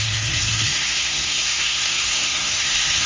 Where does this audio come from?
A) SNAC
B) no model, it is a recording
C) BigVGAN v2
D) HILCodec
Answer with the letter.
A